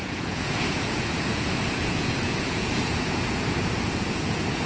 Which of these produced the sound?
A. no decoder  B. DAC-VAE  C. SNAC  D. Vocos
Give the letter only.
D